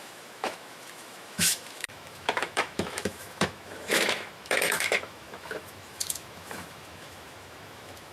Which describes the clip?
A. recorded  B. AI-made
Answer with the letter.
B